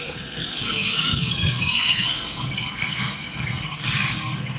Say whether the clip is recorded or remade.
remade